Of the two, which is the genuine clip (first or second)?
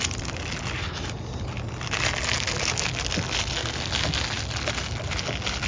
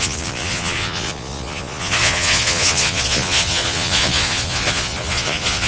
first